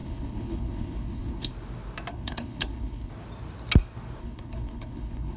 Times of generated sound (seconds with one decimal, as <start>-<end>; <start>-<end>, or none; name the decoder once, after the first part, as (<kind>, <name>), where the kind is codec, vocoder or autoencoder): 0.0-1.5 (codec, HILCodec); 2.1-3.1; 4.2-5.4